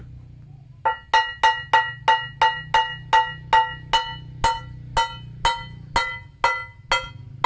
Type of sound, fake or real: real